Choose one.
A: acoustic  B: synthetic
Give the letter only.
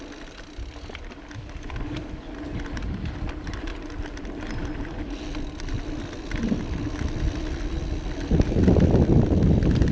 A